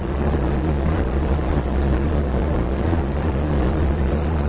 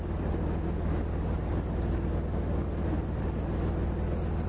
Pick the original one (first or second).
second